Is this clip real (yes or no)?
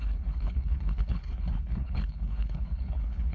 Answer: no